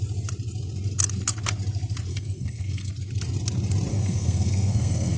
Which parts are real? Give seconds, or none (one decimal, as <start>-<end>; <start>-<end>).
0.0-2.1; 2.9-3.9